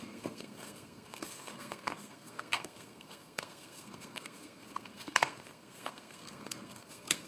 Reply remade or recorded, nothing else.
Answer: remade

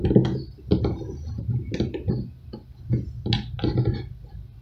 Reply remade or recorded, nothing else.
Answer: recorded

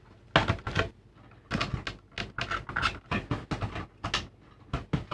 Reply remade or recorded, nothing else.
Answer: recorded